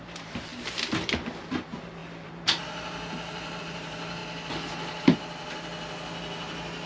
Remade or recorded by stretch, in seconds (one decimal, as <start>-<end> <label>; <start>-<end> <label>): 0.0-0.5 remade; 0.5-1.4 recorded; 1.4-4.2 remade; 4.2-6.9 recorded

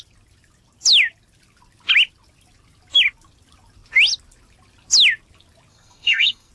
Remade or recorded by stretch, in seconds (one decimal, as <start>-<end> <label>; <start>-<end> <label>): 0.0-5.7 recorded; 5.7-6.5 remade

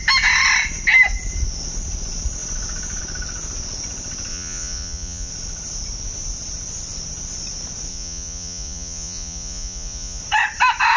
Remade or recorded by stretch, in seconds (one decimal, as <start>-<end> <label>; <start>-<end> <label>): 0.0-4.3 recorded; 4.3-5.3 remade; 5.3-7.9 recorded; 7.9-10.2 remade; 10.2-11.0 recorded

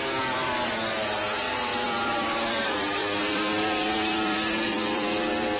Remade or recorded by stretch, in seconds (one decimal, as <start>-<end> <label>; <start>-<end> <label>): 0.0-5.6 remade

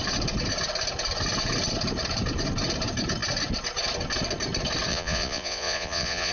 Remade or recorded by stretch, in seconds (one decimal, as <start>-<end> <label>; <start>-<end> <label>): 0.0-4.9 recorded; 4.9-6.3 remade

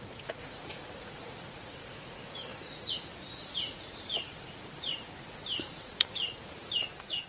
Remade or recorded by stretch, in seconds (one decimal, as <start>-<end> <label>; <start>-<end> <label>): 0.0-7.3 remade

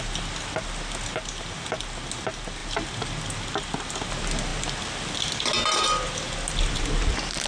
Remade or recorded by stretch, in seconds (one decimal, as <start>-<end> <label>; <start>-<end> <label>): 0.0-7.5 recorded

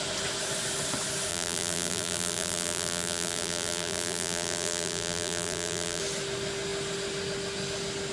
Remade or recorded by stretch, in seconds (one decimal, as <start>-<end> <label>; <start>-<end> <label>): 0.0-1.3 recorded; 1.3-6.0 remade; 6.0-8.1 recorded